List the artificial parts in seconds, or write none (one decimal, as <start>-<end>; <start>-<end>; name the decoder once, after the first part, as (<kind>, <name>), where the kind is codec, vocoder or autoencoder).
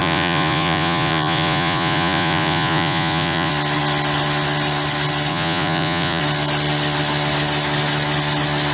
0.0-3.5 (vocoder, Vocos); 5.3-6.2